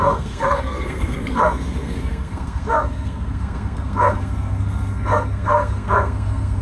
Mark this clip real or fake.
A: fake